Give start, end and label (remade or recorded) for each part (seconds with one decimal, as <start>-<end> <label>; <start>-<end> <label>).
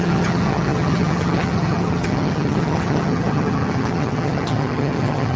0.0-5.4 remade